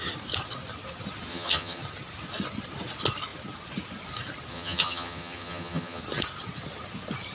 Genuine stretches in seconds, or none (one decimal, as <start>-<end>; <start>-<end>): 0.0-1.3; 1.8-4.5; 6.0-7.3